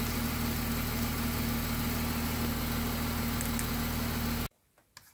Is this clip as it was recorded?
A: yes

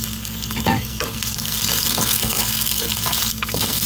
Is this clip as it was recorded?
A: no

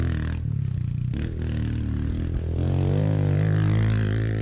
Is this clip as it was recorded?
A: yes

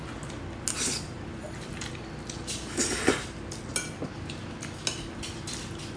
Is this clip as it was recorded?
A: yes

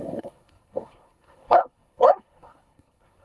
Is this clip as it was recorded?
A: no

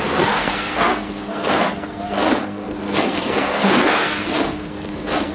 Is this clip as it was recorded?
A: no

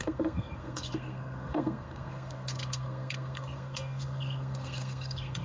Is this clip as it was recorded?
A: no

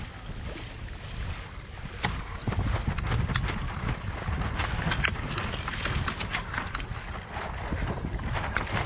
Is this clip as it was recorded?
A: yes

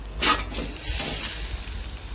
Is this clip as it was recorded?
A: yes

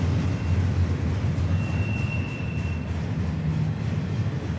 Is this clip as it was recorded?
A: yes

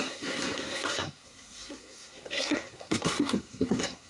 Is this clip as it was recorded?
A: no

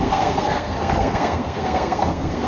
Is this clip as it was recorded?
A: no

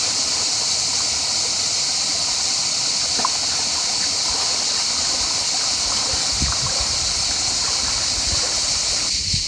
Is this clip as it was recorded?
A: yes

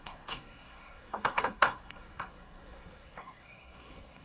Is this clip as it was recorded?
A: no